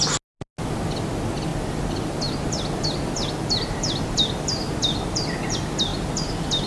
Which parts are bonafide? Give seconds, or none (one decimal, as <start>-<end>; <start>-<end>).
0.0-6.7

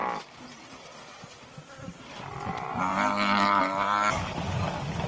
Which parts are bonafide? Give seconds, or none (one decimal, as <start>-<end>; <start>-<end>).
0.0-5.1

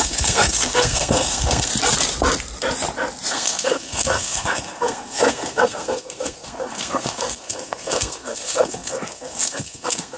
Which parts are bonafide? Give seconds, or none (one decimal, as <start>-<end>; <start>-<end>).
1.7-3.3